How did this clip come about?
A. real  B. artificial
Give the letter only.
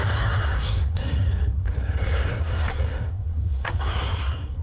B